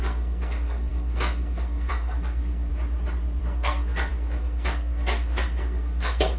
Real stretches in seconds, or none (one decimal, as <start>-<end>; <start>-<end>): 2.7-3.4